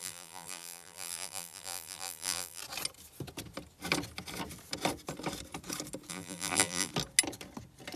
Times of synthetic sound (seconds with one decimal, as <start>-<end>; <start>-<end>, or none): 0.0-2.6; 6.1-6.9